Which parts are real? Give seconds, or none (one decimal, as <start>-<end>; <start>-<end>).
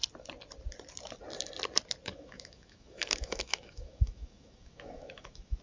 0.0-2.1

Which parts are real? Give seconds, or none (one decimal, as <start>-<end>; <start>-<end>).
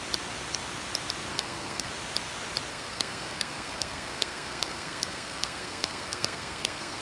0.0-1.3; 1.9-2.7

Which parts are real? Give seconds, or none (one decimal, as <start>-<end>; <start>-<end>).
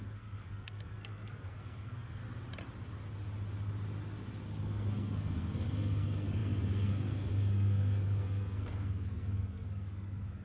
2.2-4.6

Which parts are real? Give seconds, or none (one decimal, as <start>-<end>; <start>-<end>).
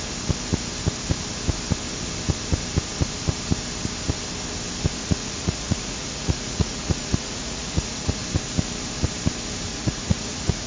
0.0-5.0; 8.2-9.7